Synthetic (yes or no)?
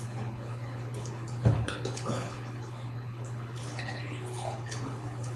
yes